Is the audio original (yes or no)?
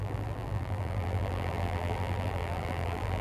no